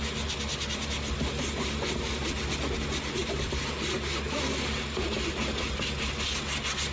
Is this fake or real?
real